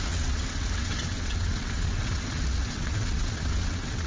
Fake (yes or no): yes